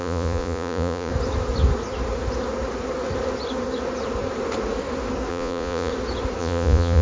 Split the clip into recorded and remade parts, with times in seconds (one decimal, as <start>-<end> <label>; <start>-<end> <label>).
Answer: 0.0-1.1 remade; 1.1-5.3 recorded; 5.3-5.9 remade; 5.9-6.4 recorded; 6.4-7.0 remade